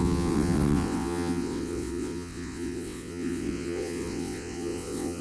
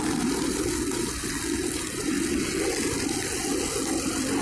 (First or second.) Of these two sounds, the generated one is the first